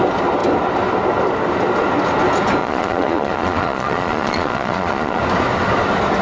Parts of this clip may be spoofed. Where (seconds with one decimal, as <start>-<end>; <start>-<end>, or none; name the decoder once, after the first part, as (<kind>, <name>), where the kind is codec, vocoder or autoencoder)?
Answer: 2.6-5.2 (vocoder, Vocos)

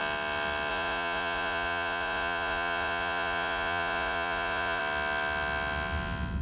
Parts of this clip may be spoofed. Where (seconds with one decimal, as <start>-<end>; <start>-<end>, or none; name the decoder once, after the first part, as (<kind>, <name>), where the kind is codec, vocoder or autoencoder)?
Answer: 0.7-4.8 (vocoder, Vocos)

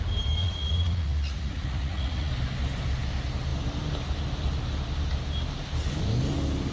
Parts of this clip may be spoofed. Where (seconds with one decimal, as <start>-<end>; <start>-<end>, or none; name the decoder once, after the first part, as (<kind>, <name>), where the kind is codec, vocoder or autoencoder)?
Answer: 0.4-2.3 (vocoder, Vocos)

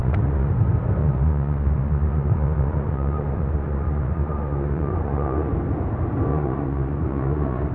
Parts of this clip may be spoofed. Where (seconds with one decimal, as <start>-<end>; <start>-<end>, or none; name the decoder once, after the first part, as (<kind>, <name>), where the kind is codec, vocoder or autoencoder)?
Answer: 0.0-0.5 (vocoder, Vocos); 1.0-5.5; 6.3-7.7

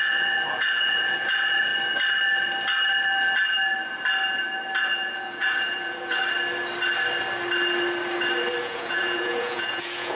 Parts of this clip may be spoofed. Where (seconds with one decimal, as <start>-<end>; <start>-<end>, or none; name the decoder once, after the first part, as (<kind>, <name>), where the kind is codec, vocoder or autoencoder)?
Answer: 0.0-1.7 (vocoder, Vocos); 4.8-6.2; 8.6-10.2

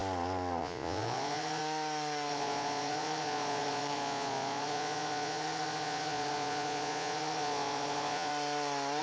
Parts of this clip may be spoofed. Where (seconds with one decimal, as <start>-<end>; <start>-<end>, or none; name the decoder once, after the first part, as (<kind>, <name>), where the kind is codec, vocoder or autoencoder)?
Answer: 0.6-1.6 (vocoder, Vocos); 2.3-8.3

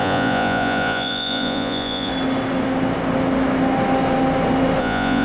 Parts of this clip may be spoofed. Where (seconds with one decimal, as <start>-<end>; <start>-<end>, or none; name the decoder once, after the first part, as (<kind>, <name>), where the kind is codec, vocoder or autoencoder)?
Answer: 0.0-2.1 (vocoder, Vocos); 4.8-5.2